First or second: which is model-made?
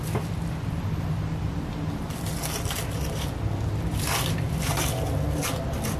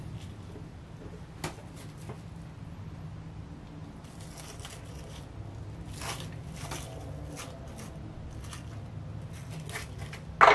first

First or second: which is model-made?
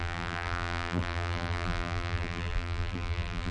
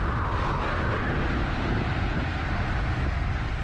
first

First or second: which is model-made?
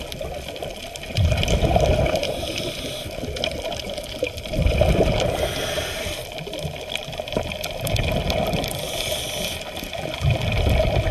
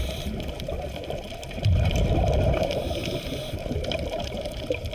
second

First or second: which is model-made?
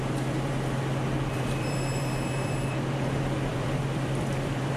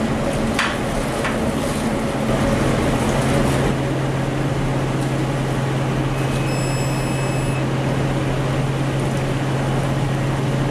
first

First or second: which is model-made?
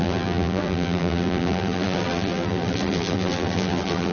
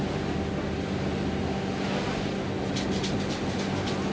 first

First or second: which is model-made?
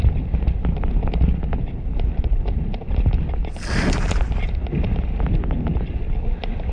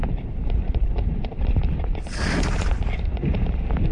second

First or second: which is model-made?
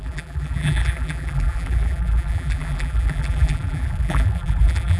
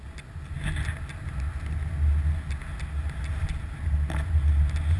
first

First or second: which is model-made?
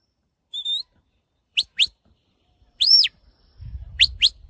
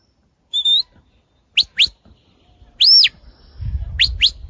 first